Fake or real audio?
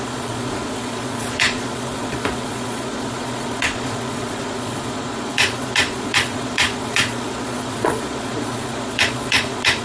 fake